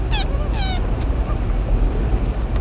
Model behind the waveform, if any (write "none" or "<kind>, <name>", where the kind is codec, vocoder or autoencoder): none